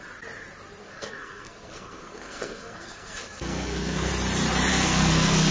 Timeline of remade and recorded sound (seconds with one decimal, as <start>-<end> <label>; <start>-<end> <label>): 0.0-0.8 recorded; 0.8-4.1 remade; 4.1-4.7 recorded; 4.7-5.5 remade